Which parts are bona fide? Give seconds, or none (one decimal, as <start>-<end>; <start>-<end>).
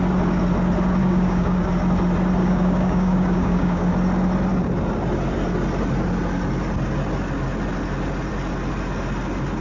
0.0-1.0; 1.7-2.4; 3.9-9.6